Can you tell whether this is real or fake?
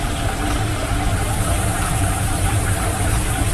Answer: fake